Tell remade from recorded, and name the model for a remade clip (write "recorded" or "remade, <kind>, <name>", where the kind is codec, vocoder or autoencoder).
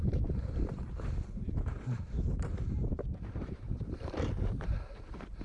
remade, vocoder, BigVGAN v2